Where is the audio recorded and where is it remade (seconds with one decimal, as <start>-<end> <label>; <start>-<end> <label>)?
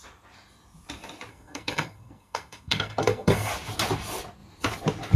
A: 0.0-1.3 recorded; 1.3-3.5 remade; 3.5-5.2 recorded